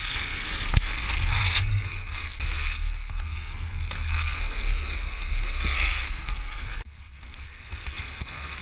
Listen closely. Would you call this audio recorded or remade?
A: remade